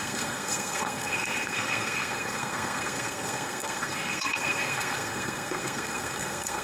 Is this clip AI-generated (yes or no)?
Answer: yes